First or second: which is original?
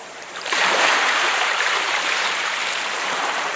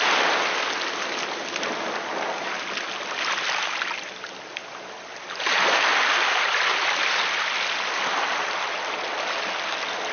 second